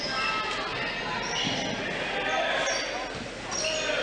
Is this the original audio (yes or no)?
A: yes